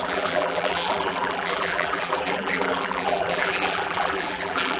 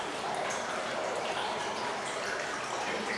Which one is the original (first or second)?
second